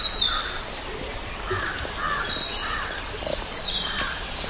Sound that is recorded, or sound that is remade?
recorded